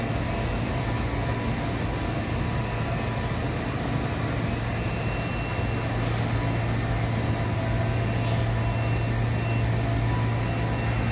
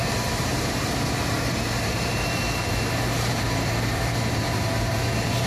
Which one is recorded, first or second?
first